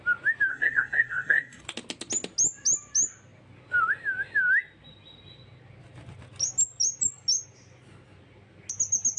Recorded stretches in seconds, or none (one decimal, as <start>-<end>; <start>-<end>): 0.0-0.5; 1.6-9.2